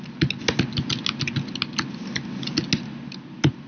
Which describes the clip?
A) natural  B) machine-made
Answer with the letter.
A